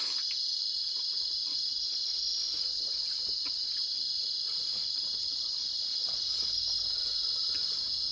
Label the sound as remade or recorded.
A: recorded